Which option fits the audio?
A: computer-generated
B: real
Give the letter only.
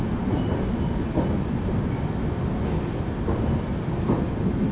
B